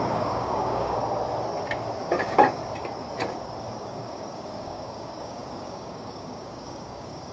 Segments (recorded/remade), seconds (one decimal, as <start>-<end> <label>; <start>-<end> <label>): 0.0-1.0 remade; 1.0-2.0 recorded; 2.0-2.6 remade; 2.6-3.8 recorded; 3.8-7.3 remade